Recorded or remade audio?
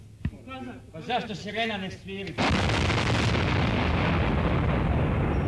recorded